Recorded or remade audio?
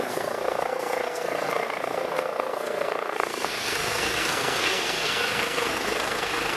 remade